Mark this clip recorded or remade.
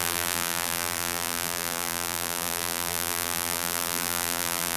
remade